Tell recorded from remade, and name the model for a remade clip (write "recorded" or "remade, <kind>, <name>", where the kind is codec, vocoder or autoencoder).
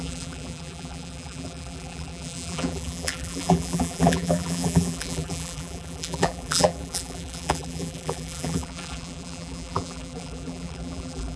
remade, vocoder, BigVGAN v2